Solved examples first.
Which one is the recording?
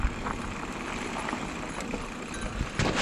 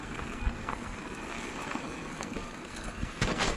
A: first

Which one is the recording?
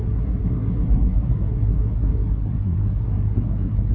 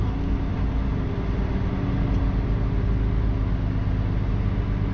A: second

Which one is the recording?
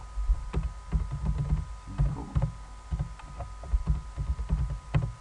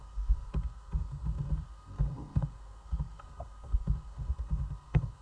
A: first